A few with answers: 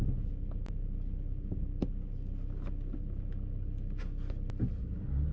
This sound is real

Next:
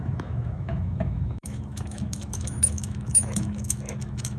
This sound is fake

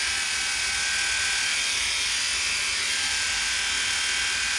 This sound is real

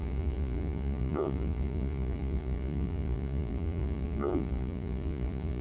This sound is fake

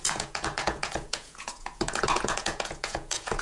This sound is fake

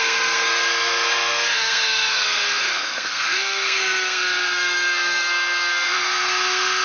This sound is fake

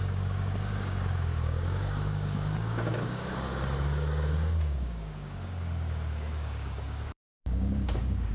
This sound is fake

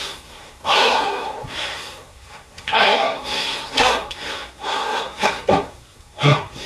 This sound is fake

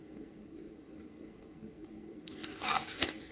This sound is fake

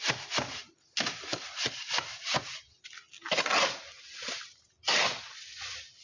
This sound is real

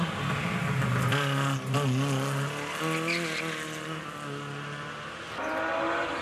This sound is real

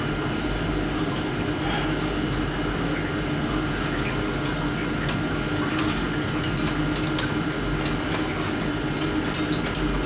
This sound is real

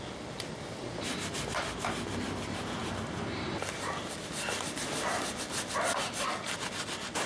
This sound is real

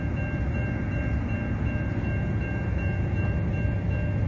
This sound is real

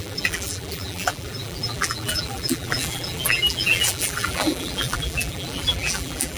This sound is fake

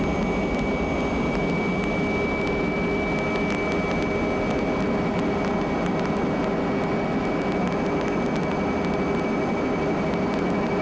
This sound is real